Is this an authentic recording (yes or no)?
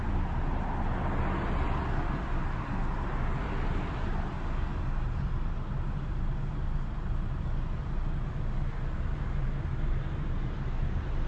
yes